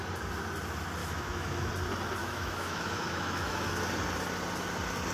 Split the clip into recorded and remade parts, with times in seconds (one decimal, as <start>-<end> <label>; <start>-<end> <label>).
0.0-1.0 recorded; 1.0-1.7 remade; 1.7-2.2 recorded; 2.2-3.7 remade; 3.7-5.1 recorded